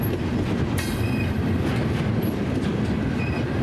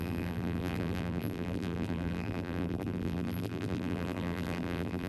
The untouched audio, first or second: first